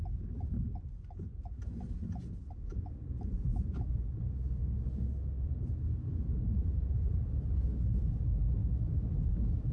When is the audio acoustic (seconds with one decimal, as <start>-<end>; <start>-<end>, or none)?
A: 0.0-2.7; 4.2-9.7